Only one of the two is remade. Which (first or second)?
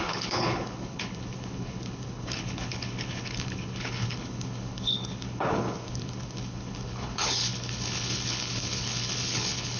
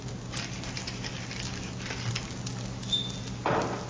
first